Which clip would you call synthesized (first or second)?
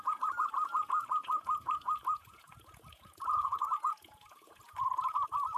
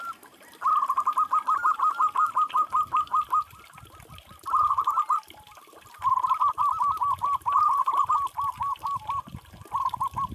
first